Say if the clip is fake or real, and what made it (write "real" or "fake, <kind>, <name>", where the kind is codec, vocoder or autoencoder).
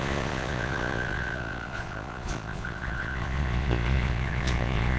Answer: fake, vocoder, Vocos